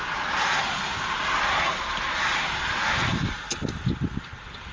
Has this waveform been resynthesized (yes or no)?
no